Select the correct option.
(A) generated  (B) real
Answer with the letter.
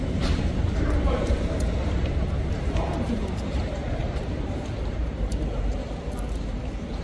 A